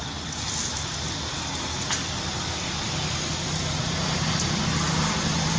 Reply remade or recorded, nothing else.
recorded